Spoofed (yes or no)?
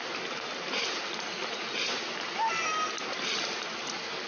no